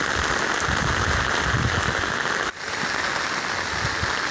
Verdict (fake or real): real